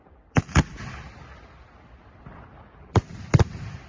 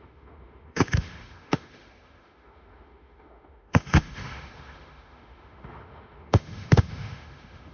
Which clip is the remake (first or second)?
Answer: second